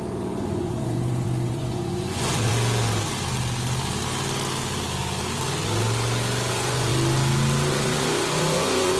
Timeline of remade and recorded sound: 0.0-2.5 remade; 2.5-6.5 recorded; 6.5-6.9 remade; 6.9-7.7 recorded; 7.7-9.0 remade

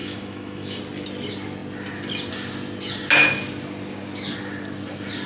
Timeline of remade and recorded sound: 0.0-0.8 remade; 0.8-5.3 recorded

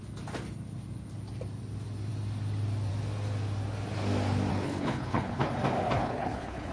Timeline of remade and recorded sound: 0.0-4.5 recorded; 4.5-5.5 remade; 5.5-6.0 recorded; 6.0-6.7 remade

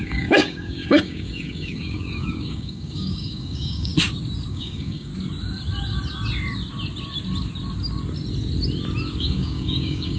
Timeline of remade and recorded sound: 0.0-3.9 remade; 3.9-4.5 recorded; 4.5-5.1 remade; 5.1-9.2 recorded; 9.2-10.2 remade

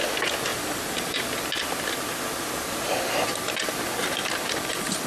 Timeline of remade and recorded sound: 0.0-0.5 recorded; 0.5-1.2 remade; 1.2-4.2 recorded; 4.2-5.1 remade

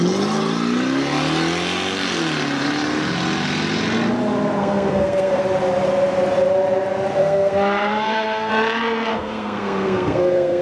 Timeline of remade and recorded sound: 0.0-4.6 recorded; 4.6-5.4 remade; 5.4-7.2 recorded; 7.2-8.5 remade; 8.5-9.1 recorded; 9.1-10.6 remade

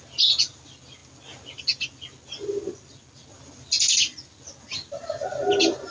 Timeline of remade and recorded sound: 0.0-5.9 recorded